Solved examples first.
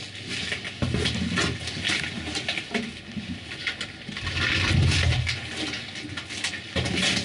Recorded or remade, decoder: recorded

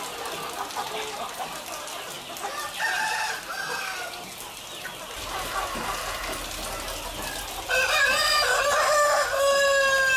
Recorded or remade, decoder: recorded